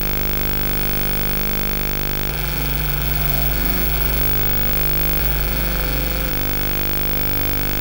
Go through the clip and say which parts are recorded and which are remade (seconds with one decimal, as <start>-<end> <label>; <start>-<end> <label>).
0.0-2.3 recorded; 2.3-4.2 remade; 4.2-5.2 recorded; 5.2-6.3 remade; 6.3-7.8 recorded

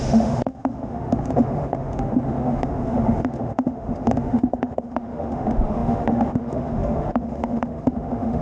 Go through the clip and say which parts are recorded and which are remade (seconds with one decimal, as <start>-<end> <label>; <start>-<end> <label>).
0.0-8.4 remade